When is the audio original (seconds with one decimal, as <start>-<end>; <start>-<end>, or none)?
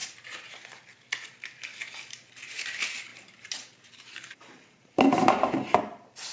0.6-1.7; 2.3-3.1; 5.8-6.3